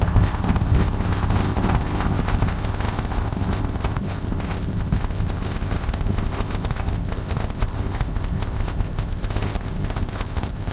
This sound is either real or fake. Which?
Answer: fake